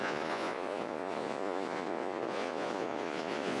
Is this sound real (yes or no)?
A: no